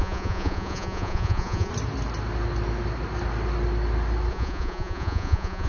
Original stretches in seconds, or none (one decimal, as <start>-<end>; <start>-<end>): 1.7-4.3